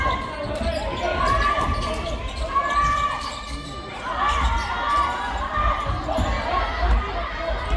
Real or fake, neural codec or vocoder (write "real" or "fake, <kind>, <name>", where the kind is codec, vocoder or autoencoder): real